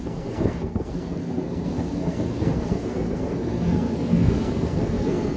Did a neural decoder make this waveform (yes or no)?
yes